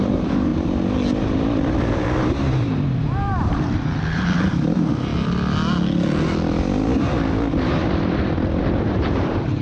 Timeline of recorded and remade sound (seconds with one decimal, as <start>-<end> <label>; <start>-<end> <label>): 0.0-0.5 remade; 0.5-1.8 recorded; 1.8-5.1 remade; 5.1-8.8 recorded; 8.8-9.6 remade